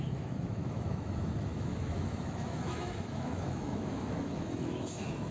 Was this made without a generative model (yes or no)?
no